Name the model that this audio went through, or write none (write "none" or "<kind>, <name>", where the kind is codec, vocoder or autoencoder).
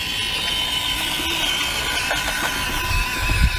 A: none